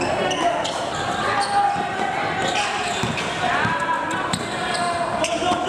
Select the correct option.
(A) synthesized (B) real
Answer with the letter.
B